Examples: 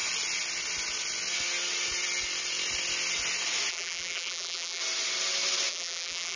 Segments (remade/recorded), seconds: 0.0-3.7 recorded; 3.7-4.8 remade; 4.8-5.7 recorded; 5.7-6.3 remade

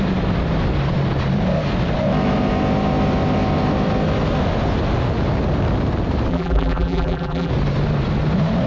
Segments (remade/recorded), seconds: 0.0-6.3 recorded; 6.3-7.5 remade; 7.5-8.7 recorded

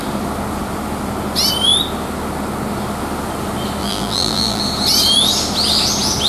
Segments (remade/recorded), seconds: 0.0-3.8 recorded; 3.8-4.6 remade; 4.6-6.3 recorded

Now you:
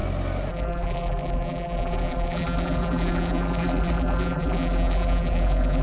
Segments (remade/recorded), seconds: 0.0-0.5 recorded; 0.5-5.8 remade

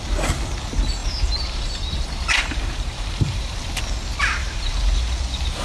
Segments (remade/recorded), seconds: 0.0-1.0 recorded; 1.0-3.8 remade; 3.8-4.4 recorded; 4.4-5.0 remade; 5.0-5.6 recorded